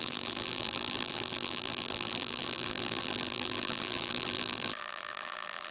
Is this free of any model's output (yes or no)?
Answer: no